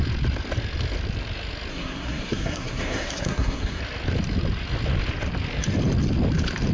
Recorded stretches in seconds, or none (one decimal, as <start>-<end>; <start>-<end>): 0.0-1.7; 3.8-6.7